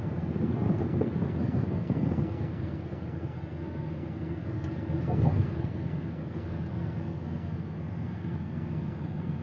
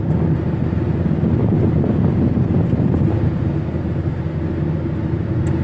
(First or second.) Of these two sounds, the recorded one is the second